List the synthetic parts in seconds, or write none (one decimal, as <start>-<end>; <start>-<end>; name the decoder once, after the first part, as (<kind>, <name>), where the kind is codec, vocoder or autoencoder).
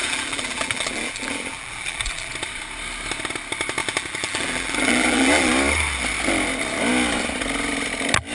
0.0-2.3 (vocoder, BigVGAN v2); 3.8-5.5